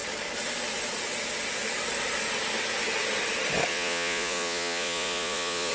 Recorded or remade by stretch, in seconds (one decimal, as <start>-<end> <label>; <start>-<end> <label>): 0.0-3.7 recorded; 3.7-5.7 remade